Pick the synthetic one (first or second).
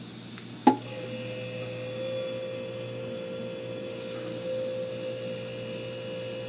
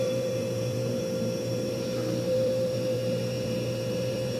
second